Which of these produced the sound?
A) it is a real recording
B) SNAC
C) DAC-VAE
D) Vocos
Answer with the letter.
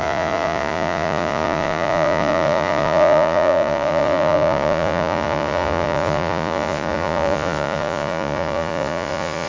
D